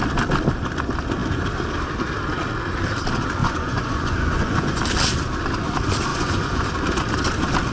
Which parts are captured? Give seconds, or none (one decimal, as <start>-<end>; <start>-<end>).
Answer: 0.0-3.4; 4.8-6.1; 6.7-7.7